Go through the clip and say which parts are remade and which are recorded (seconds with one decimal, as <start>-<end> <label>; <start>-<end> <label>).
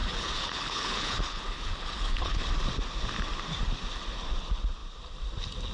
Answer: 0.0-2.5 remade; 2.5-5.7 recorded